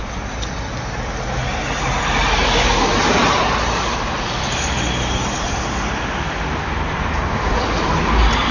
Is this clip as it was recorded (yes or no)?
yes